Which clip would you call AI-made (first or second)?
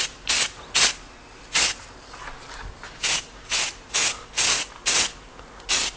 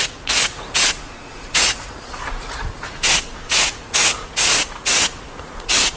second